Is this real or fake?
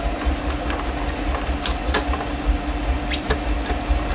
real